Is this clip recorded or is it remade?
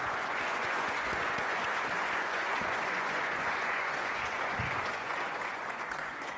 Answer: remade